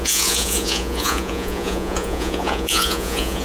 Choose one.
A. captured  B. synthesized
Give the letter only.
B